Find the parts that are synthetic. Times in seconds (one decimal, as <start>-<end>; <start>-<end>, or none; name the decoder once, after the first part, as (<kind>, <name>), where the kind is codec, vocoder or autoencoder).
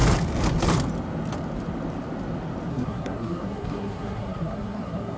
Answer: 2.7-5.2 (codec, SNAC)